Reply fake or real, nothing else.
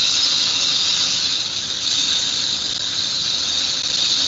real